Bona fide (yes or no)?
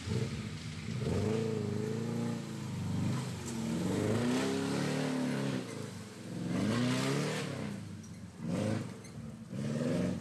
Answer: yes